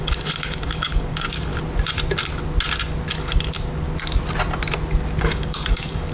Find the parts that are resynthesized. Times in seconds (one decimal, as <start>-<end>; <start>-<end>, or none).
0.0-1.5; 5.2-6.1